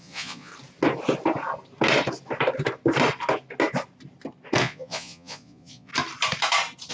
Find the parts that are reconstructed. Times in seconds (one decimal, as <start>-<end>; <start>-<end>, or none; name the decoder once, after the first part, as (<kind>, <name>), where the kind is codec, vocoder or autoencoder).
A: 0.0-0.5 (vocoder, Vocos); 4.6-5.9